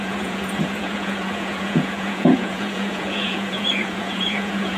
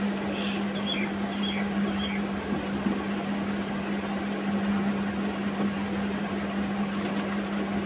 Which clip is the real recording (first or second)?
second